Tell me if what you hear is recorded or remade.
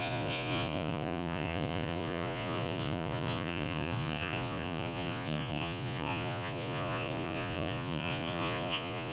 remade